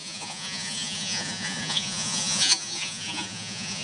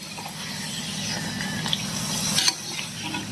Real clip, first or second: second